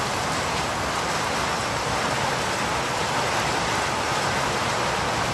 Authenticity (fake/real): real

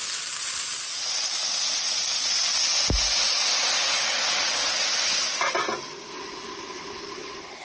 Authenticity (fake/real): real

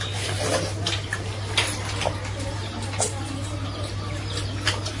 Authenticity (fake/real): real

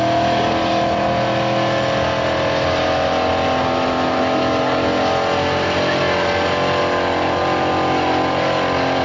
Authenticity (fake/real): real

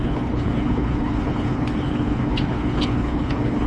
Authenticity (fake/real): fake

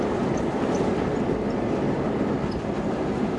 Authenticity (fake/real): real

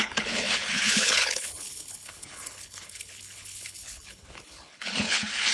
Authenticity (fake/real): fake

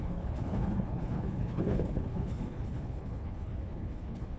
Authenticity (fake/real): fake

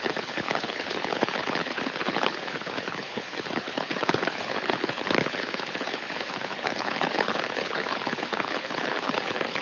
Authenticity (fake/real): fake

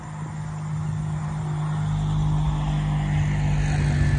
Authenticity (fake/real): real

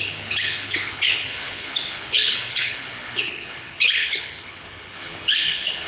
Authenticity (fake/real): fake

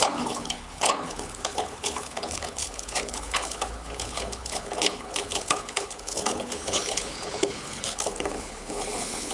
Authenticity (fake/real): fake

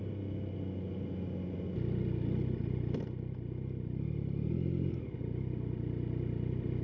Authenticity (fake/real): real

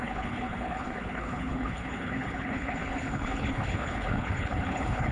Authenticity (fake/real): fake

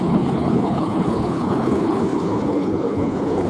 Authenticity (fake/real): fake